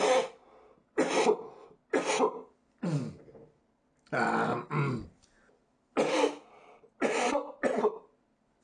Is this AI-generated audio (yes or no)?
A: no